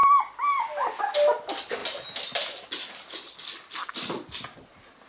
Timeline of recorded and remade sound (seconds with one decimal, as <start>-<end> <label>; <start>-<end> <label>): 0.0-5.1 recorded